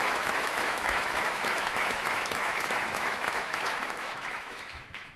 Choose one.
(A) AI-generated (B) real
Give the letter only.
A